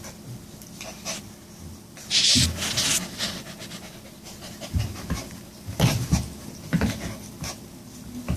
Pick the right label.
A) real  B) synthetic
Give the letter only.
A